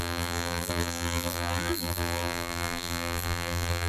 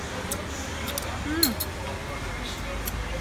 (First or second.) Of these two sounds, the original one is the second